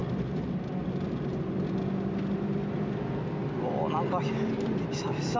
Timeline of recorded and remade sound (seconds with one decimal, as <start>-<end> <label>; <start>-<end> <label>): 0.0-5.4 recorded